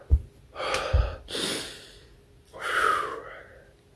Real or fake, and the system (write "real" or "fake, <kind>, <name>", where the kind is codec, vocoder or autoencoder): real